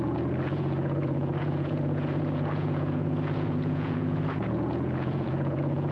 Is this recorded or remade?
remade